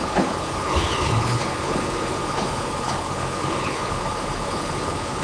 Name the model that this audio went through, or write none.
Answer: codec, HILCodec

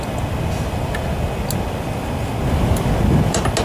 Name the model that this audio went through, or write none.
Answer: none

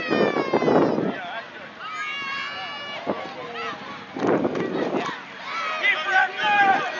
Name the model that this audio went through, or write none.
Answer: none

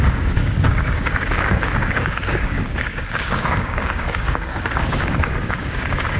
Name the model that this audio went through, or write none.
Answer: codec, DAC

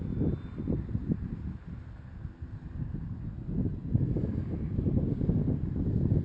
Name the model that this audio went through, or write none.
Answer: none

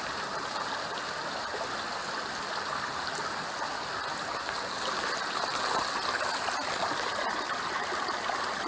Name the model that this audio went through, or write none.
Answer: none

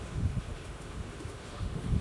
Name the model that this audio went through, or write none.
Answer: autoencoder, DAC-VAE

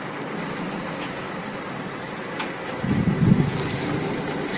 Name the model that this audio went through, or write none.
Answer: none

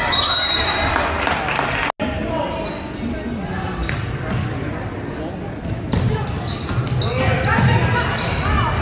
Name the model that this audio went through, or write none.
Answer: none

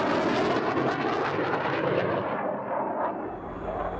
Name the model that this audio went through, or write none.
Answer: none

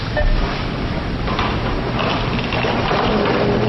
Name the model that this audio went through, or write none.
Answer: none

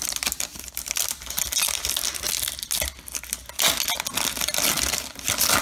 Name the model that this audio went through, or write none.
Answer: none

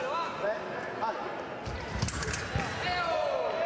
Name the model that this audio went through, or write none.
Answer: none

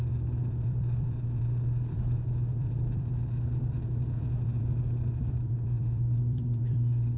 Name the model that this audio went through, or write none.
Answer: vocoder, BigVGAN v2